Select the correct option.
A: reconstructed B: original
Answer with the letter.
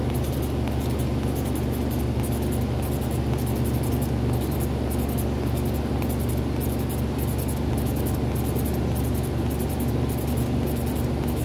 B